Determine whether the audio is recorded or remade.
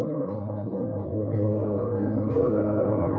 remade